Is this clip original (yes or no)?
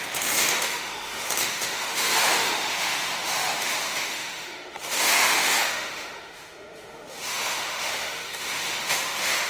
no